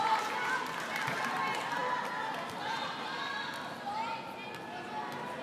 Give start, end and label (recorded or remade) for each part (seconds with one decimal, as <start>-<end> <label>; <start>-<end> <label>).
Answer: 0.0-5.4 recorded